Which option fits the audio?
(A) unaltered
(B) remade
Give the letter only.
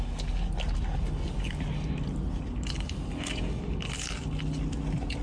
A